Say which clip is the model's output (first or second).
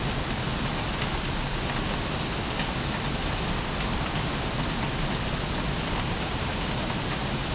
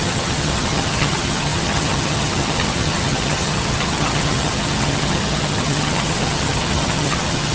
second